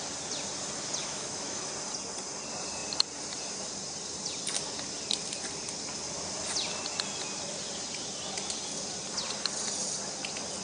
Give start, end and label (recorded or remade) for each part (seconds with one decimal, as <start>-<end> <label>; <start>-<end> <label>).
0.0-1.0 recorded; 1.0-1.7 remade; 1.7-10.6 recorded